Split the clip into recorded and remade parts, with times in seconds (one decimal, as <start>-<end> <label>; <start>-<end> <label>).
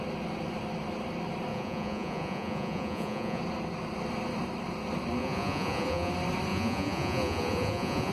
0.0-1.5 recorded; 1.5-3.4 remade; 3.4-5.2 recorded; 5.2-6.1 remade; 6.1-6.5 recorded; 6.5-8.1 remade